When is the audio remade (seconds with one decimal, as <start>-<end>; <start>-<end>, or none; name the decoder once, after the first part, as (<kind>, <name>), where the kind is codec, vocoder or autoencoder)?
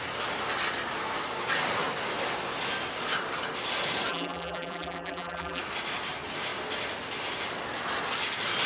4.1-5.6 (vocoder, BigVGAN v2)